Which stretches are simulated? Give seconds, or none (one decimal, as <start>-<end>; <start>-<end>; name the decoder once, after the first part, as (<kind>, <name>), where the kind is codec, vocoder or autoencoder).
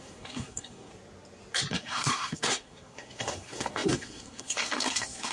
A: 0.0-0.9 (codec, SNAC); 1.7-5.3